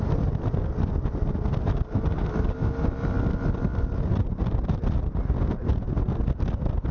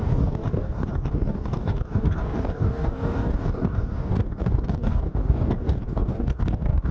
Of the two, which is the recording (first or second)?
first